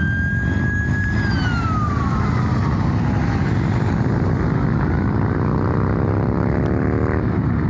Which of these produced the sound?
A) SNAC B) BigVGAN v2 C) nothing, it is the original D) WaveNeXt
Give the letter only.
C